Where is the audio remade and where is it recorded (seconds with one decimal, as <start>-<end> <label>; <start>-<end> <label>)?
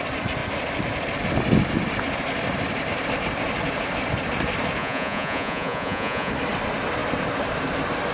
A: 0.0-4.8 recorded; 4.8-6.3 remade; 6.3-8.1 recorded